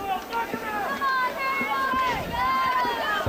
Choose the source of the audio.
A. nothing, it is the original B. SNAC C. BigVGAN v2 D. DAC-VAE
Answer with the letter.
A